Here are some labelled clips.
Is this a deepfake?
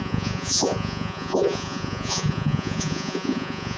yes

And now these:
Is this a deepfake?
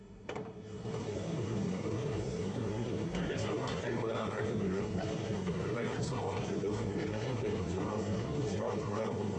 yes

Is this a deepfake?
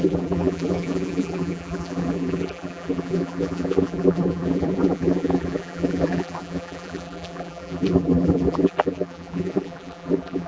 yes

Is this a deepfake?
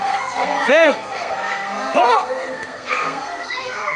yes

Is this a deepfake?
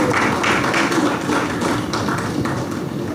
no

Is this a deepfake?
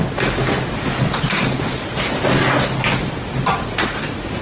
no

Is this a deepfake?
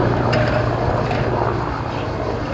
no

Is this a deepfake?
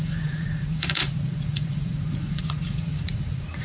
yes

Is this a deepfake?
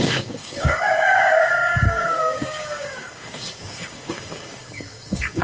yes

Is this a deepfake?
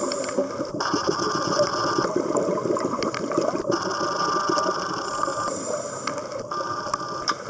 no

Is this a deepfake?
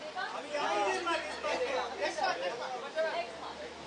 no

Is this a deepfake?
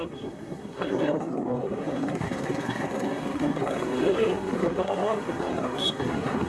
yes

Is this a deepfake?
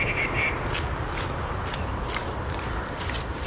no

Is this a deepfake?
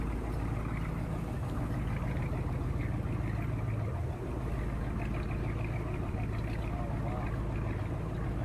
no